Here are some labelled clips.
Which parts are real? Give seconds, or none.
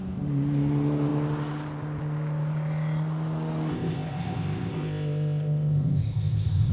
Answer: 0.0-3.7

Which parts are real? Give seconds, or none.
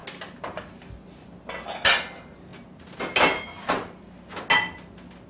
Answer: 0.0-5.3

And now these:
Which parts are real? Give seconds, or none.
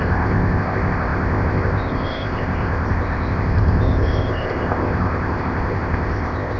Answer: none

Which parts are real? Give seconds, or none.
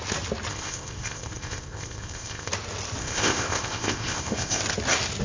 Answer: 0.0-0.5; 2.5-3.0; 4.6-5.2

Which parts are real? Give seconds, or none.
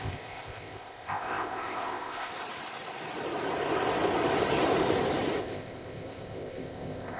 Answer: 2.3-5.4